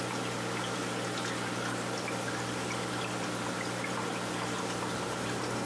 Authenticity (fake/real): real